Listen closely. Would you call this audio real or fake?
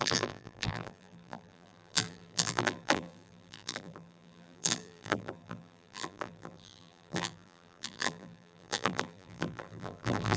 fake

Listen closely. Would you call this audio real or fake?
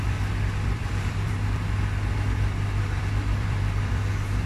fake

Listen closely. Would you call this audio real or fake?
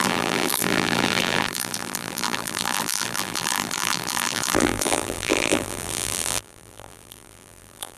fake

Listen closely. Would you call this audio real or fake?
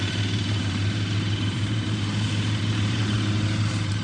fake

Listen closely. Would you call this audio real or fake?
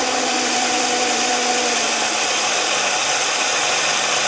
fake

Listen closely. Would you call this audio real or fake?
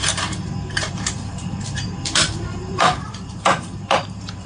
fake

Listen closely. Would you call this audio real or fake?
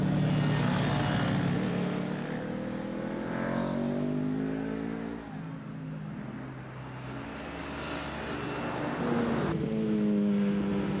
real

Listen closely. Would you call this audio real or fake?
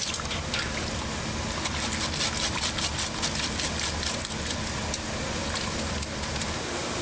real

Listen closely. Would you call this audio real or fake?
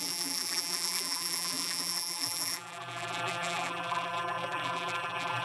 fake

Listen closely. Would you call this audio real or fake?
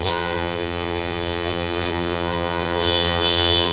fake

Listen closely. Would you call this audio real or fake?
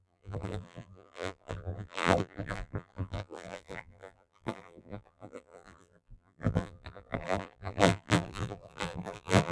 fake